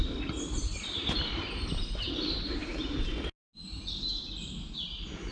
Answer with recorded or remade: recorded